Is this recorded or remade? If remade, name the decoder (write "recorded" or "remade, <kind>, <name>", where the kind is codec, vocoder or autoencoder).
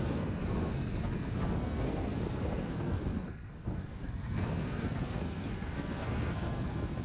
remade, codec, SNAC